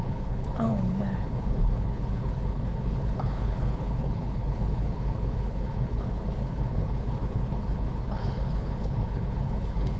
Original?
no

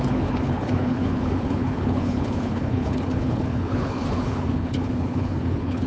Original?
no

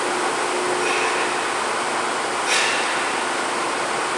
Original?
yes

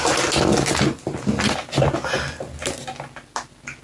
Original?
yes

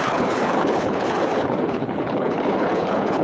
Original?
no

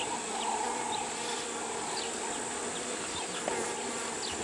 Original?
yes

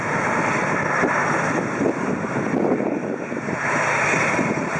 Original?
yes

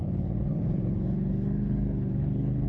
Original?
no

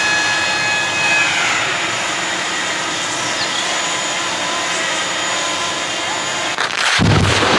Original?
yes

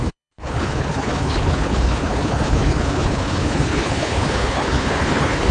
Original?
no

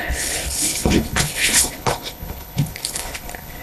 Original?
no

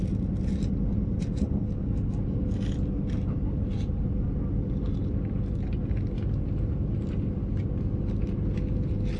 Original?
yes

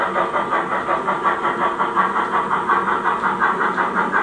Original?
yes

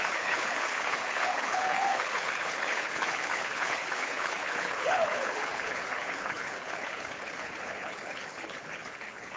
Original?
no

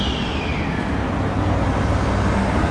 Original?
yes